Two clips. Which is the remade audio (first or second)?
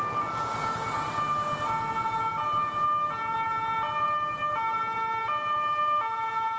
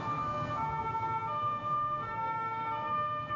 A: second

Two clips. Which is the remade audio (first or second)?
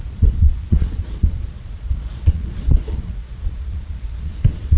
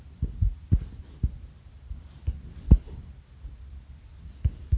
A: first